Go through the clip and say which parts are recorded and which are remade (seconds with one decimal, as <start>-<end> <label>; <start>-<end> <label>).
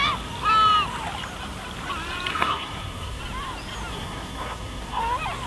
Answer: 0.0-2.3 recorded; 2.3-3.2 remade; 3.2-3.9 recorded; 3.9-5.0 remade; 5.0-5.5 recorded